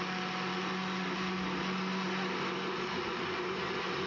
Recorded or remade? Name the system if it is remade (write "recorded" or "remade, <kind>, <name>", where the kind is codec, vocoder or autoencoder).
recorded